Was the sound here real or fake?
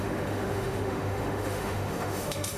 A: fake